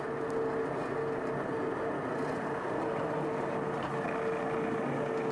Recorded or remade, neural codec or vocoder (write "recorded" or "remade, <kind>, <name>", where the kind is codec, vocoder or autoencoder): recorded